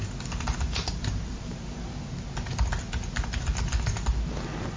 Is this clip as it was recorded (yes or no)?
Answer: yes